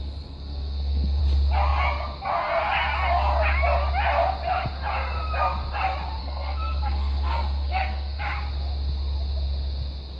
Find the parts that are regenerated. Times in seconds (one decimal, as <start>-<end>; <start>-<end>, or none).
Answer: 0.0-1.2; 6.2-8.2